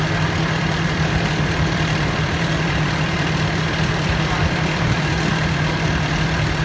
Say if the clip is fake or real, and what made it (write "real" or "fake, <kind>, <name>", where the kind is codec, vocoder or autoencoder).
fake, vocoder, BigVGAN v2